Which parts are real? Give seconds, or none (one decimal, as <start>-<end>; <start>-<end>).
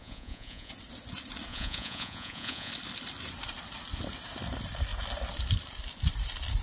0.7-1.5; 2.7-6.6